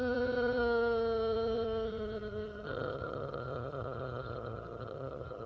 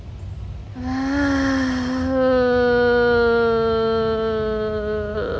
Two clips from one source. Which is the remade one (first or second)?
first